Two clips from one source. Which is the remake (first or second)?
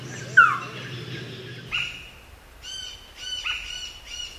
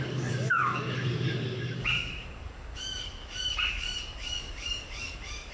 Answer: second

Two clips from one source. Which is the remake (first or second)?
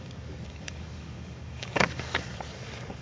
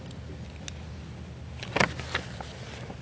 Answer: first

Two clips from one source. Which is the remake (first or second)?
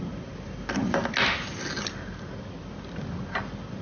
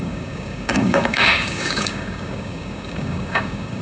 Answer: second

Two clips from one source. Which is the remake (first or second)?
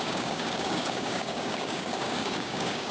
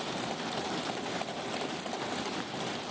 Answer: first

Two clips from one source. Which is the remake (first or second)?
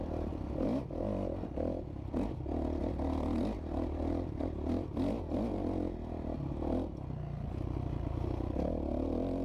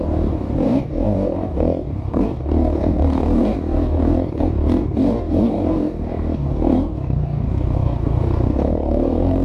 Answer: second